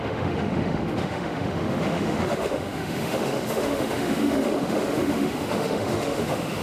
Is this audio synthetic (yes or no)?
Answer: yes